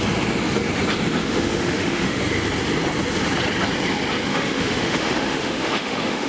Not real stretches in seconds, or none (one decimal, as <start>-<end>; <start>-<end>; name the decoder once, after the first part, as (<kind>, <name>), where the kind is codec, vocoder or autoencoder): 1.2-2.2 (autoencoder, DAC-VAE); 4.3-6.3